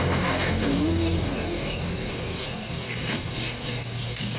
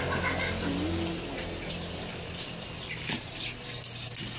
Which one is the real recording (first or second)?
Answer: second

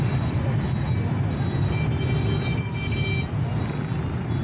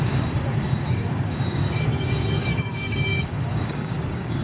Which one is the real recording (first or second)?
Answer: first